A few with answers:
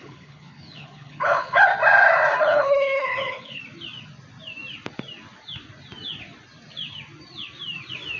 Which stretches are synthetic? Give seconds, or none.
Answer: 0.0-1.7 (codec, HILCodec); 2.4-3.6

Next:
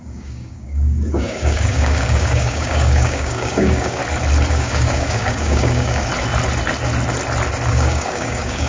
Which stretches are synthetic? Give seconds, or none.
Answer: 0.0-4.0 (codec, DAC); 4.5-6.1; 7.7-8.7

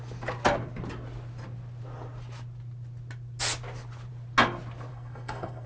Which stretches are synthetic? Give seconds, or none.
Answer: 4.9-5.7 (codec, SNAC)

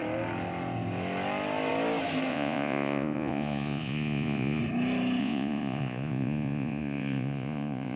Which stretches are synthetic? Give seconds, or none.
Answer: 2.3-4.6 (vocoder, Vocos); 5.2-8.0